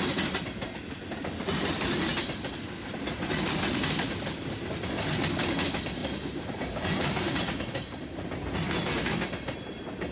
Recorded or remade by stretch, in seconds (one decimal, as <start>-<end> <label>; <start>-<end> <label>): 0.0-6.0 recorded; 6.0-7.4 remade; 7.4-10.1 recorded

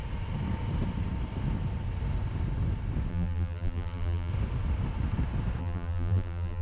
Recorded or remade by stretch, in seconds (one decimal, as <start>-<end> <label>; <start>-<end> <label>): 0.0-3.1 recorded; 3.1-4.3 remade; 4.3-5.6 recorded; 5.6-6.6 remade

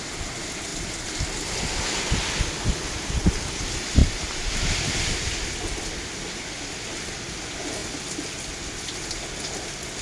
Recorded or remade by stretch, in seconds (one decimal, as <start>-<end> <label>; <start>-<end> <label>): 0.0-4.0 recorded; 4.0-4.5 remade; 4.5-10.0 recorded